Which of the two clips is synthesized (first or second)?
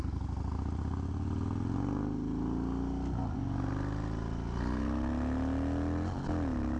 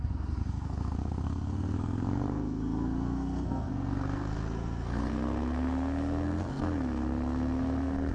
second